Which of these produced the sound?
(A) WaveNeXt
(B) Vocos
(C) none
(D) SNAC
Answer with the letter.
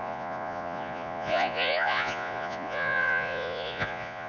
B